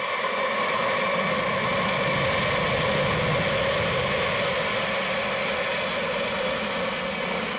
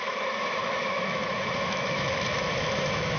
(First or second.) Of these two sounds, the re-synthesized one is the second